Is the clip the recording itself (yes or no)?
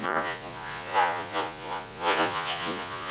no